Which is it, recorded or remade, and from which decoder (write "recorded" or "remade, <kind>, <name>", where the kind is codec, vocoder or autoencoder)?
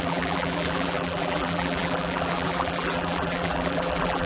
remade, vocoder, BigVGAN v2